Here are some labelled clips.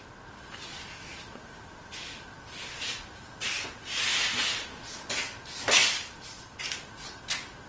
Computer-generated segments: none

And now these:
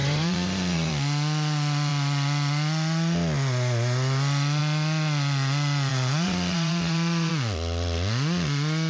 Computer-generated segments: 0.0-0.9 (vocoder, Vocos); 5.9-7.3

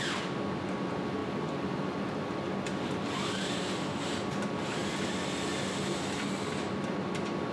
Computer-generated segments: none

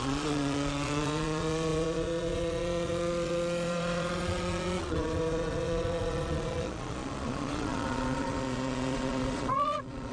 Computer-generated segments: 0.0-10.1 (vocoder, Vocos)

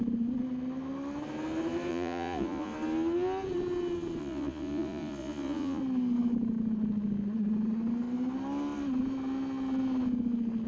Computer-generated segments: 1.9-2.7 (vocoder, Vocos); 4.2-5.8